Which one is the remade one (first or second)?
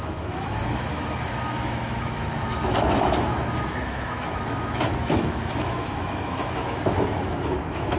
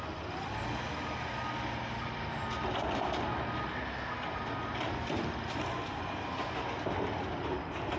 first